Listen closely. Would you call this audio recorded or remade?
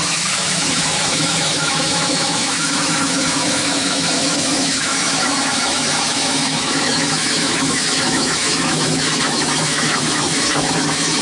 remade